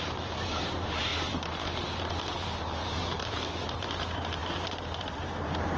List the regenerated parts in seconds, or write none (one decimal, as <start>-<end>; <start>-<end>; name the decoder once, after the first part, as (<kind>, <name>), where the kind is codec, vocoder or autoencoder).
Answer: 0.0-5.8 (vocoder, BigVGAN v2)